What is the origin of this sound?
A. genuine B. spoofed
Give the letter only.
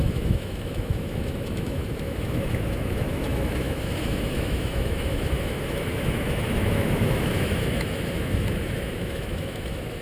B